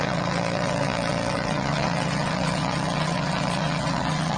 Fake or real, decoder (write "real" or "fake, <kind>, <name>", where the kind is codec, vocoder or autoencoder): fake, vocoder, WaveNeXt